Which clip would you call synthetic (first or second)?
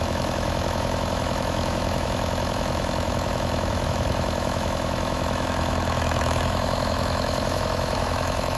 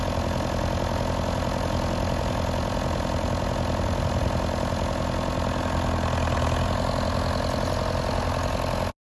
first